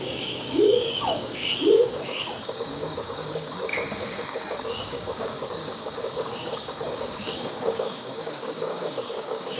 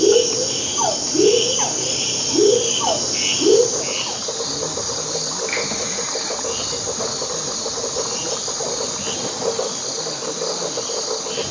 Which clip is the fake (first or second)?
first